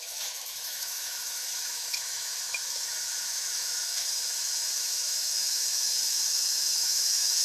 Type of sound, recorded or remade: remade